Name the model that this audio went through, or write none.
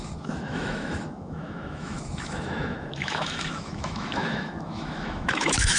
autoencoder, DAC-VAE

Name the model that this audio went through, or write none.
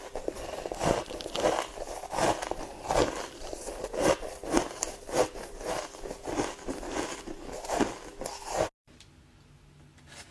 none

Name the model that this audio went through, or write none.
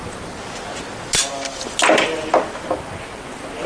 none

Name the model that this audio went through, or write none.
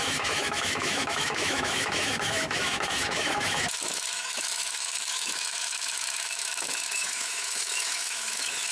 autoencoder, DAC-VAE